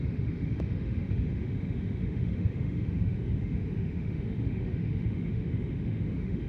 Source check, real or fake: fake